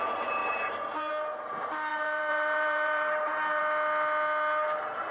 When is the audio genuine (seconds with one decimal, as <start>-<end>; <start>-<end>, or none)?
0.0-0.4; 1.1-1.9; 3.6-5.1